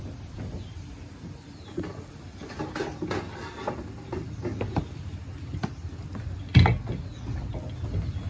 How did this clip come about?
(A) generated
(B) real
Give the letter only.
B